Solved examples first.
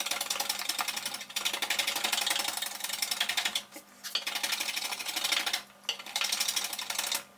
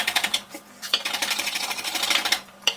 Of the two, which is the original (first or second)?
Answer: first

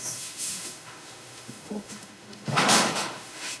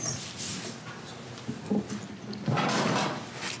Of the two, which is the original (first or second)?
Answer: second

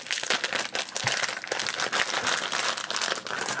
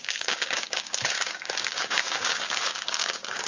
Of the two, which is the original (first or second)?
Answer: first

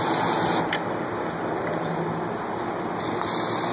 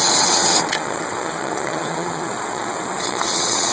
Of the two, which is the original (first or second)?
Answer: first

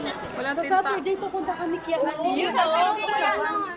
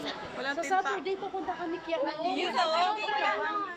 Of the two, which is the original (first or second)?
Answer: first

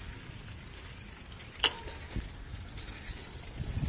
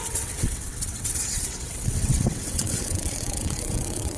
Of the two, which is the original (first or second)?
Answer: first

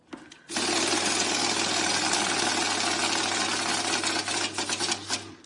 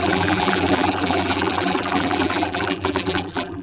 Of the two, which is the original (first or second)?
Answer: first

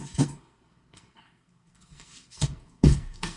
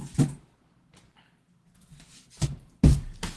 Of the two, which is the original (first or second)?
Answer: second